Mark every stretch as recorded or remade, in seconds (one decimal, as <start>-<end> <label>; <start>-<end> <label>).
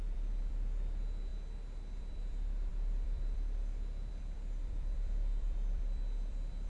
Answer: 0.0-1.3 remade; 1.3-2.0 recorded; 2.0-6.7 remade